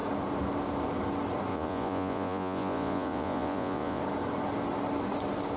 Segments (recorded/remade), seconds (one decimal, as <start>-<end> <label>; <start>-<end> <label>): 0.0-1.5 recorded; 1.5-4.0 remade; 4.0-5.6 recorded